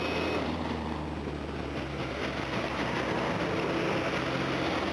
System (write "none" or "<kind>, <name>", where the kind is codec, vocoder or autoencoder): none